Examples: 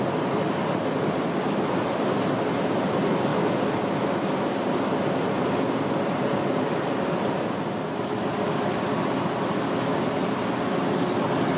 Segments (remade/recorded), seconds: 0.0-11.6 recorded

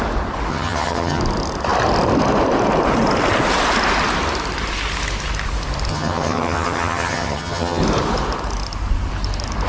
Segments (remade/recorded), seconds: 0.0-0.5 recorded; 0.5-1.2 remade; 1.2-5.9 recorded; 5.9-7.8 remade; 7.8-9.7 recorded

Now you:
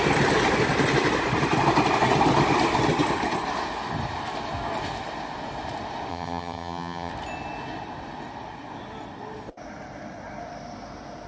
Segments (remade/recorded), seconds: 0.0-6.1 recorded; 6.1-7.1 remade; 7.1-11.3 recorded

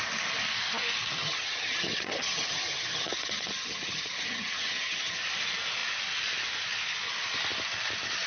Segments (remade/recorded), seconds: 0.0-1.2 recorded; 1.2-5.2 remade; 5.2-8.3 recorded

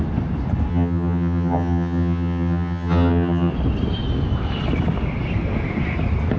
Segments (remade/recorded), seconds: 0.0-0.7 recorded; 0.7-3.5 remade; 3.5-6.4 recorded

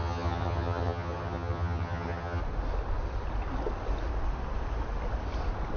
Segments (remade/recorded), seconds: 0.0-2.4 remade; 2.4-5.8 recorded

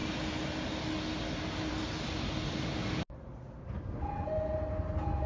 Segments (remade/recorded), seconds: 0.0-5.3 recorded

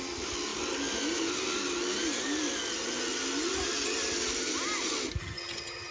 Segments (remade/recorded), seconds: 0.0-5.2 recorded; 5.2-5.9 remade